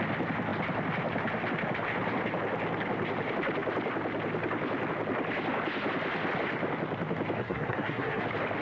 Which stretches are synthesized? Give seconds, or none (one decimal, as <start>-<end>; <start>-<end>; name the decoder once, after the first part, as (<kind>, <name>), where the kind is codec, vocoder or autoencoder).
7.4-8.2 (codec, SNAC)